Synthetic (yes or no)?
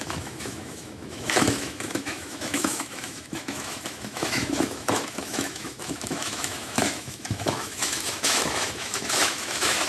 yes